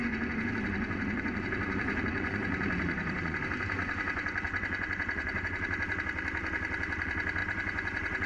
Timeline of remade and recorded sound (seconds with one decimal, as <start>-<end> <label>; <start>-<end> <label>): 0.0-3.4 remade; 3.4-3.8 recorded; 3.8-6.0 remade; 6.0-7.4 recorded; 7.4-8.3 remade